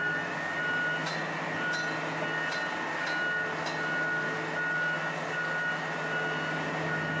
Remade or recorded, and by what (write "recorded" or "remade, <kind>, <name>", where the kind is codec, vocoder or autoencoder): recorded